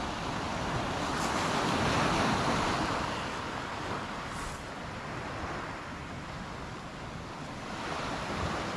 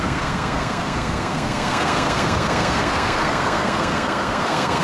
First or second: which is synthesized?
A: second